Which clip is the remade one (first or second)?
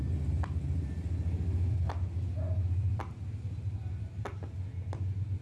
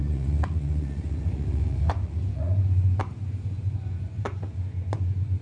second